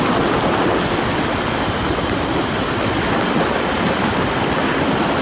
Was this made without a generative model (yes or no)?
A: yes